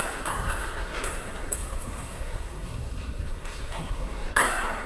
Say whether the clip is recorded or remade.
remade